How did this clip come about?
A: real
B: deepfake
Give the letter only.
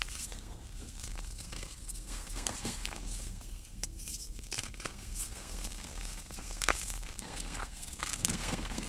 B